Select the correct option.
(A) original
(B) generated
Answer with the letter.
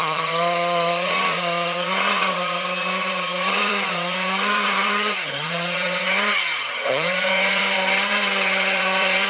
B